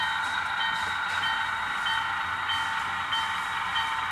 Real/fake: real